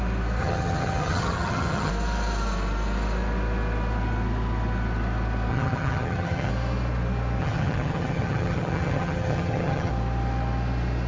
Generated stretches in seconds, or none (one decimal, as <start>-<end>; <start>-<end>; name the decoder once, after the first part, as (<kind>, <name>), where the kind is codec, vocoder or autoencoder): 0.4-1.9 (vocoder, HiFi-GAN); 5.5-6.5; 7.4-9.9